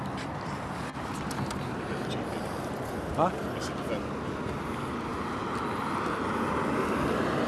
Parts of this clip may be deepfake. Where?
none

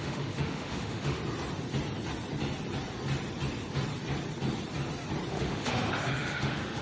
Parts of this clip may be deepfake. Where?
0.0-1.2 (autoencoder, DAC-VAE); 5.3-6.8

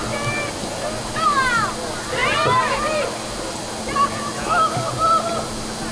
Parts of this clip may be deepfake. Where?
none

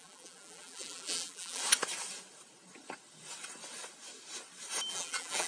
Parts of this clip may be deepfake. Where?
0.0-1.6 (vocoder, BigVGAN v2); 4.9-5.5

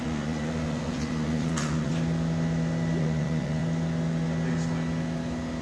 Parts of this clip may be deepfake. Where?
0.0-1.9 (vocoder, Vocos); 3.0-3.6

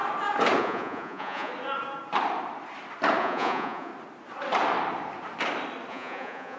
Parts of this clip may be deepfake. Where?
0.6-1.5 (vocoder, Vocos); 3.2-3.9; 5.9-6.6